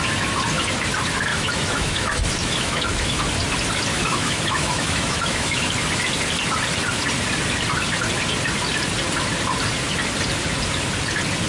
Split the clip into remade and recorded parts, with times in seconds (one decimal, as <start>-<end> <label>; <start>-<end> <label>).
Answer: 0.0-1.3 recorded; 1.3-3.2 remade; 3.2-3.9 recorded; 3.9-5.7 remade; 5.7-11.5 recorded